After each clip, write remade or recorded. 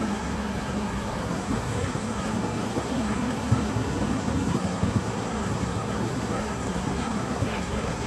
remade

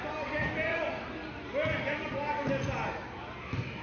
recorded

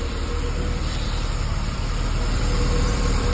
remade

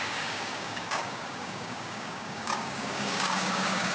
remade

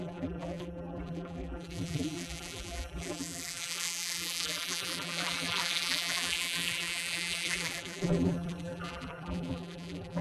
remade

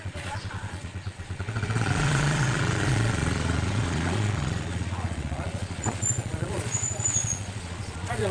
remade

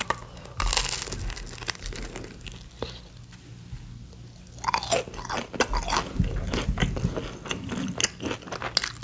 recorded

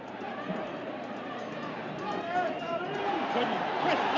remade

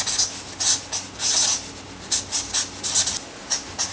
recorded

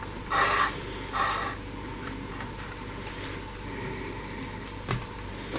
recorded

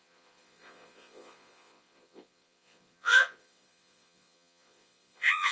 remade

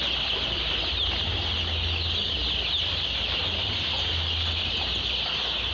remade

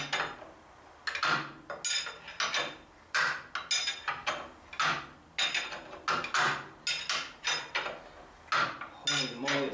recorded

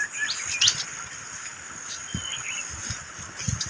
recorded